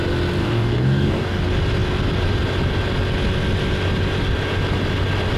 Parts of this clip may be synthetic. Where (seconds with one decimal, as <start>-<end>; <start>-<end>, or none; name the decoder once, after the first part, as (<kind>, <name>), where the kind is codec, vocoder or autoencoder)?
0.4-1.4 (codec, DAC)